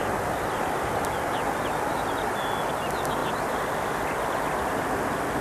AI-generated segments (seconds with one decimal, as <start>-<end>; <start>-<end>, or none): none